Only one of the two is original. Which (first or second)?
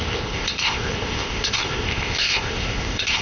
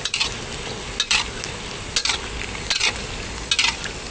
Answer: second